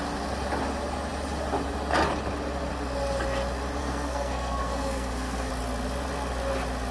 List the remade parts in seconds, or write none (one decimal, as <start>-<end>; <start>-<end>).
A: 3.8-5.5